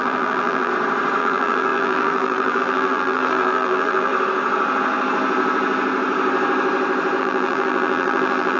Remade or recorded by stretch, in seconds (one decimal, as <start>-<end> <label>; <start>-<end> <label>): 0.0-0.7 remade; 0.7-1.2 recorded; 1.2-4.1 remade; 4.1-7.2 recorded; 7.2-8.6 remade